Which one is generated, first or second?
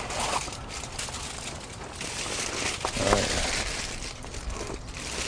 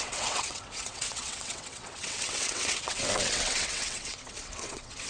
second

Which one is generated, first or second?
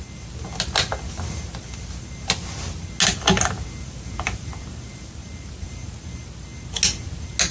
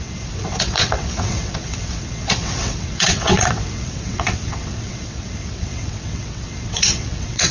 second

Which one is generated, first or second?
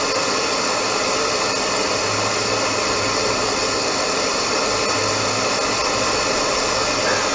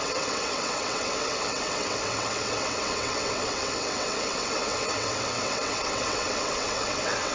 second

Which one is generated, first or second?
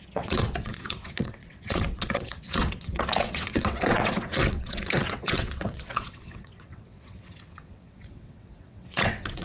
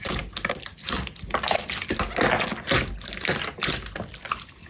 first